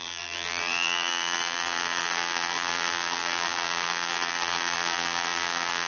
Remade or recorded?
remade